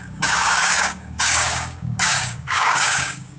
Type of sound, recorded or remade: remade